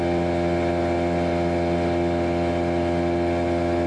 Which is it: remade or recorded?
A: recorded